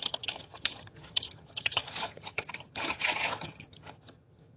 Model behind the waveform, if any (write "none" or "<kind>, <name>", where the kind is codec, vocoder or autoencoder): vocoder, HiFi-GAN